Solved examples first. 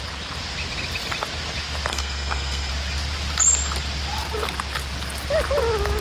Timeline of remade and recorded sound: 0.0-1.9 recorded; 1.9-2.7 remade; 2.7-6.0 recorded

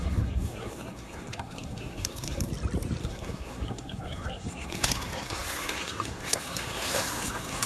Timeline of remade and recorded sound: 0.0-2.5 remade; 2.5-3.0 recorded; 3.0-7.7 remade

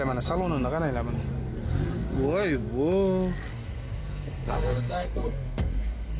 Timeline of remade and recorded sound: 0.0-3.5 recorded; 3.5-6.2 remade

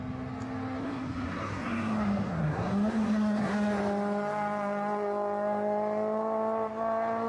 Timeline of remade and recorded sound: 0.0-0.8 recorded; 0.8-3.8 remade; 3.8-7.3 recorded

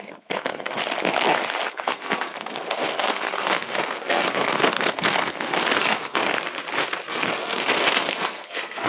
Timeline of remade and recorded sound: 0.0-0.8 remade; 0.8-1.7 recorded; 1.7-6.2 remade; 6.2-7.1 recorded; 7.1-8.9 remade

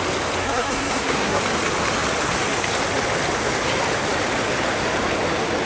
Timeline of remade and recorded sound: 0.0-0.4 recorded; 0.4-1.4 remade; 1.4-5.7 recorded